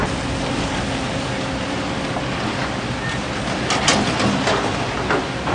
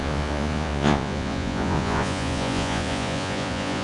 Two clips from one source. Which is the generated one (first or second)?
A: second